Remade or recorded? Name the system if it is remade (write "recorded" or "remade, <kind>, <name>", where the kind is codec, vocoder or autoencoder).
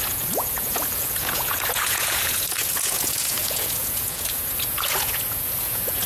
remade, vocoder, Vocos